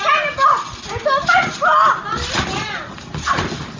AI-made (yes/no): no